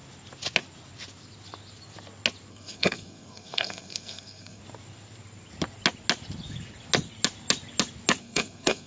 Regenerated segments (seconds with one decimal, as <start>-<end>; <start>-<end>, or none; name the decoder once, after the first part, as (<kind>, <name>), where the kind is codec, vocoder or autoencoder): 2.5-4.6 (codec, SNAC); 8.2-8.9